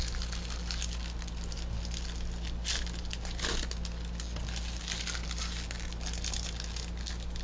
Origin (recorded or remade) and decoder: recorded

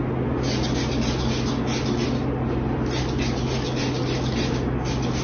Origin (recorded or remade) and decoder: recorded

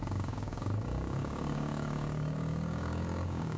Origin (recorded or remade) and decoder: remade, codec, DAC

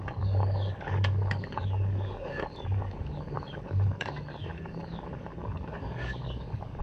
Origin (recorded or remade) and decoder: remade, codec, DAC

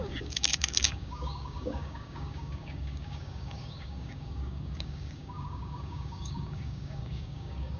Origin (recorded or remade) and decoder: remade, codec, DAC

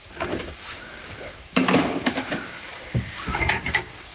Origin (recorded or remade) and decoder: remade, codec, DAC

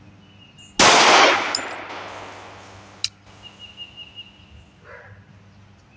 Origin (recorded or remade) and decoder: recorded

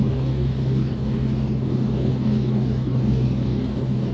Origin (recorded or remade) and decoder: remade, codec, DAC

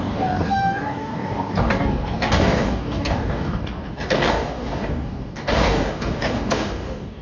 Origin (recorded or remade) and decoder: remade, codec, DAC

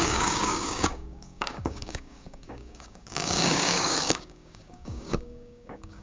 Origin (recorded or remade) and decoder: remade, codec, DAC